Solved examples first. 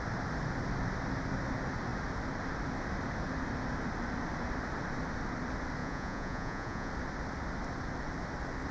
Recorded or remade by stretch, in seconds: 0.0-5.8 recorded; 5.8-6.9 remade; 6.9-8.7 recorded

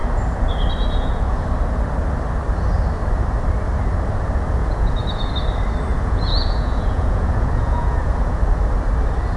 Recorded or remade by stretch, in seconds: 0.0-4.6 recorded; 4.6-5.3 remade; 5.3-5.9 recorded; 5.9-8.4 remade; 8.4-9.4 recorded